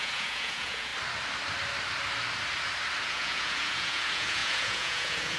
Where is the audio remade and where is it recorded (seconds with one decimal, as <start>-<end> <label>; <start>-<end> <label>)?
0.0-0.9 remade; 0.9-3.0 recorded; 3.0-5.4 remade